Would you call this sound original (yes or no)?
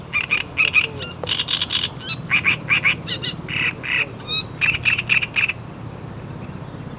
yes